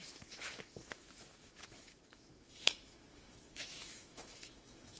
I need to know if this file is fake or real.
fake